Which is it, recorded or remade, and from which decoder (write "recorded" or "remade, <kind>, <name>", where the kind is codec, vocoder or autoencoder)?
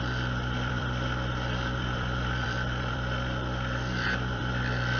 remade, vocoder, BigVGAN v2